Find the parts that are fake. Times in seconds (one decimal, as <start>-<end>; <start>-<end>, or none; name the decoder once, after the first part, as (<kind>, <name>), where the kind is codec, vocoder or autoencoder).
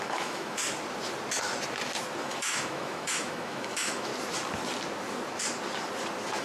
0.0-0.6 (autoencoder, DAC-VAE); 2.2-4.1